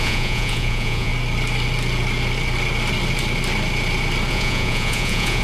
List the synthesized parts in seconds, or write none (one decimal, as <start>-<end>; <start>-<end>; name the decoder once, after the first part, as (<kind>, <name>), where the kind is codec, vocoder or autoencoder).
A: 0.0-1.1 (vocoder, Vocos); 4.3-5.4